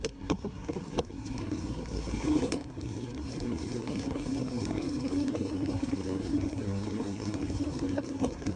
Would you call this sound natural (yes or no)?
no